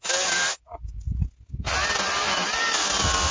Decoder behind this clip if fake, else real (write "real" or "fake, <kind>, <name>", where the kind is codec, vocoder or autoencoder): real